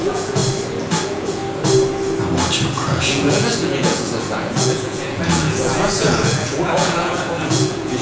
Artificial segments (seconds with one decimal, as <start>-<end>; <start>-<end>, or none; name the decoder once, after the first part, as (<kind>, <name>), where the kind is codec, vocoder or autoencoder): 0.0-0.4 (vocoder, Vocos); 1.0-1.4; 2.7-8.0